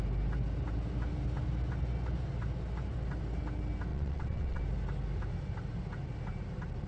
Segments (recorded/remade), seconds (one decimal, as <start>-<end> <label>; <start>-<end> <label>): 0.0-3.9 recorded; 3.9-4.6 remade; 4.6-6.9 recorded